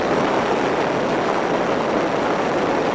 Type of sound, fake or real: real